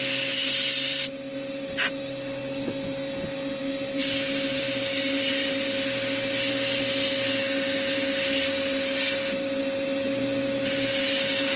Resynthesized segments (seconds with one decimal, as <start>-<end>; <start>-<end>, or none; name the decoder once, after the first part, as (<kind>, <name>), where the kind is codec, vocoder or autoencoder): none